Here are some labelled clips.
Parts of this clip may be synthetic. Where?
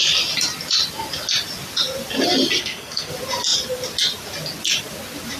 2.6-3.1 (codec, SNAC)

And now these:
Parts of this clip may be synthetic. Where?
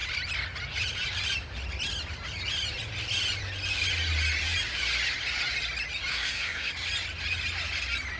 6.1-6.7 (codec, SNAC)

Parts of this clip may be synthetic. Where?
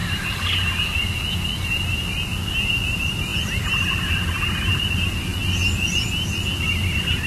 none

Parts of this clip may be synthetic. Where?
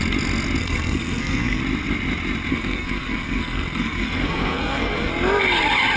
0.6-1.6 (codec, SNAC); 2.5-5.1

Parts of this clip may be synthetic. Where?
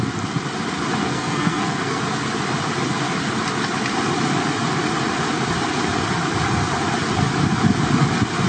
1.0-2.0 (codec, SNAC)